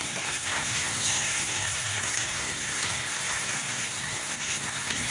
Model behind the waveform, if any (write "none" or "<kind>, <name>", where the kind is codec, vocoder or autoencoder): codec, SNAC